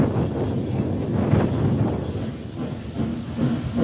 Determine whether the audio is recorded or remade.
recorded